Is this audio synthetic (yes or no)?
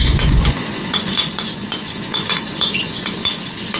yes